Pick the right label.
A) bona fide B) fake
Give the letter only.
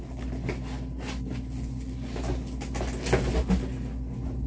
A